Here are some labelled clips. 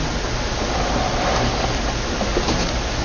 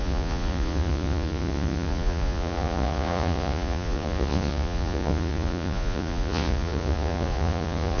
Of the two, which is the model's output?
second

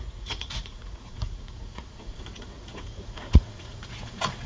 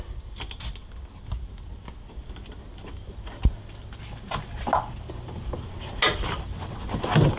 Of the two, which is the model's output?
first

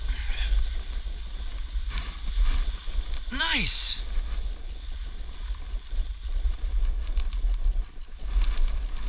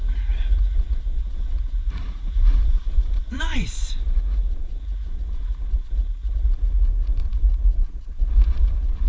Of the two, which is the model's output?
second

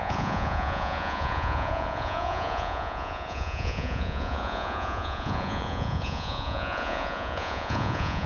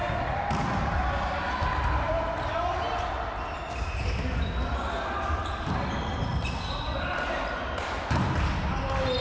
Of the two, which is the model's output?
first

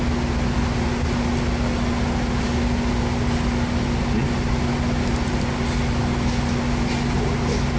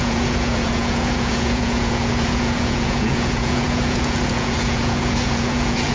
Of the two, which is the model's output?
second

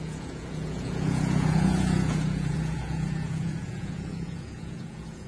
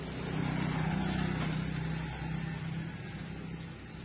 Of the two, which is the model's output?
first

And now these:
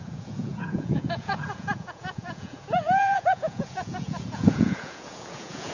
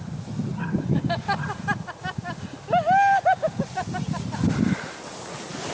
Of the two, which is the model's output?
first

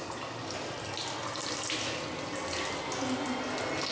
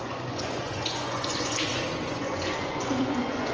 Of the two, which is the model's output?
second